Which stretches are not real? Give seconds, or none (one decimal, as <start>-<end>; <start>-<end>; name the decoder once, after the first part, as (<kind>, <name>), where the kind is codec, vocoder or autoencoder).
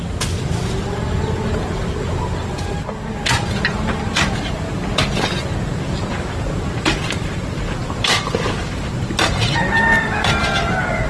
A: none